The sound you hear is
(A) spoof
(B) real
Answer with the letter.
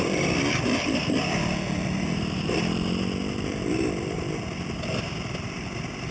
A